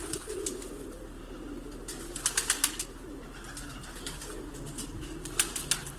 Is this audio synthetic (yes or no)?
no